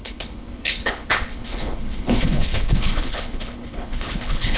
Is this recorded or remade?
remade